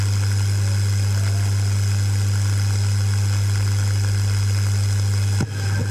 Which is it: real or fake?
real